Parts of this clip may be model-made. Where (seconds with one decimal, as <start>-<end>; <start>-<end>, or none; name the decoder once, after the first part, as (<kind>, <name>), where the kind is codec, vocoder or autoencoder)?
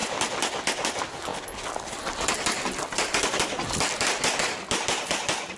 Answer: none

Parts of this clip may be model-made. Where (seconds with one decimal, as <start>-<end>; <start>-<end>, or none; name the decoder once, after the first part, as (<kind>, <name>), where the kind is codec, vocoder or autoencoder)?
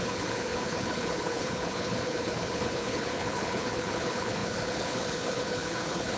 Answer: 0.0-6.2 (codec, HILCodec)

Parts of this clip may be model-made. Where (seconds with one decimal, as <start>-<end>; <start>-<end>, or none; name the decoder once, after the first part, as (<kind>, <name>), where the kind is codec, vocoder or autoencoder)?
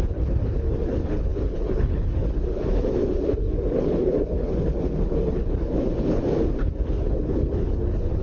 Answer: 0.0-6.2 (codec, HILCodec); 6.7-8.2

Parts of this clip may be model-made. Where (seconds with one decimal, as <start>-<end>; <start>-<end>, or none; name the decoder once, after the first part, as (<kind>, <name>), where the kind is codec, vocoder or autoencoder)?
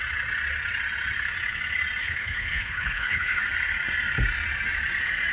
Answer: 2.0-3.4 (codec, HILCodec)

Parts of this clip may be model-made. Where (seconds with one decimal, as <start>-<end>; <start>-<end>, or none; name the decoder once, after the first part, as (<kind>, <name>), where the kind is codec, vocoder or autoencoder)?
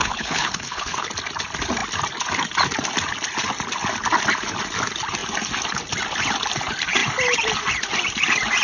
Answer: 0.0-1.1 (codec, HILCodec)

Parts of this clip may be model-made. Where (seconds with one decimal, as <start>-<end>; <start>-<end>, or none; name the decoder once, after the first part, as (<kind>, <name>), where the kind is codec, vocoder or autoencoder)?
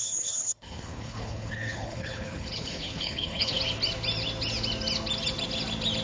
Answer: 0.0-3.6 (codec, HILCodec)